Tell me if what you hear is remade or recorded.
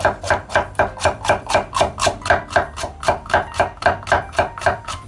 recorded